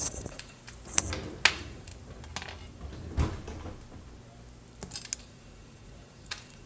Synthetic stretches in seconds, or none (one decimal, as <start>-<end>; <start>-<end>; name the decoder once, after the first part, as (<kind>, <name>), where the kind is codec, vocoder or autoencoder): 0.0-0.6 (vocoder, Vocos); 1.5-1.9; 5.2-6.7